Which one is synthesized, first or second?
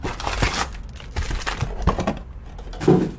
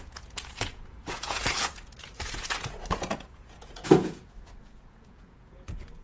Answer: second